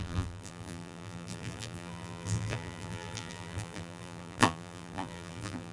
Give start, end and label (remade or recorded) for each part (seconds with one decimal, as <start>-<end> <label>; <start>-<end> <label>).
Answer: 0.0-5.7 remade